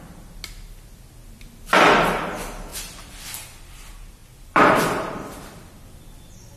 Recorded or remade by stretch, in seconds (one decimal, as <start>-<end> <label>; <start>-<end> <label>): 0.0-2.7 recorded; 2.7-3.6 remade; 3.6-4.2 recorded; 4.2-5.4 remade; 5.4-6.6 recorded